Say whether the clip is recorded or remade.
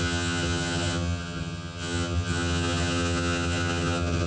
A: remade